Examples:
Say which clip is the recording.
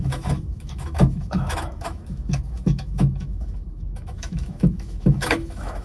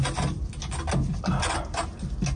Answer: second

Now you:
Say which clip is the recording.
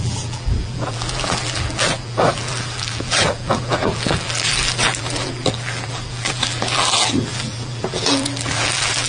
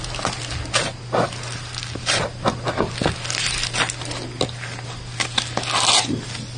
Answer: second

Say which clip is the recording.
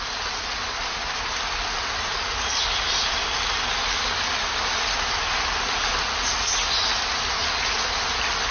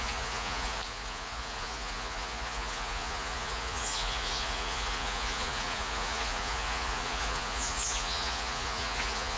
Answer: first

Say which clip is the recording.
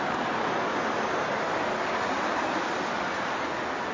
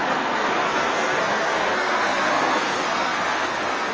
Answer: first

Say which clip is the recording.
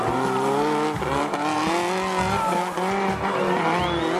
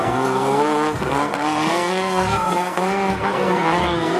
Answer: first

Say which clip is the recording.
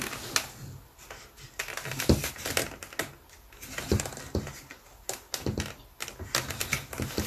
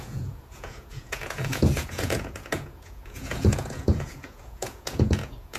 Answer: first